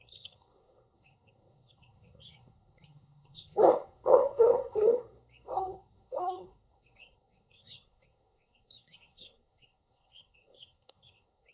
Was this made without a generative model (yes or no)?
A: no